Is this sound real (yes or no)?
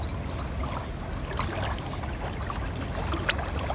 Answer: yes